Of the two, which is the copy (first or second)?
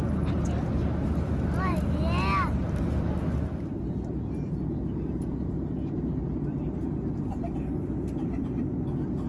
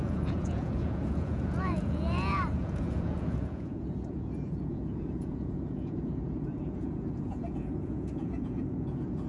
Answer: second